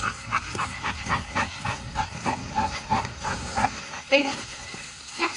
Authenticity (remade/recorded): remade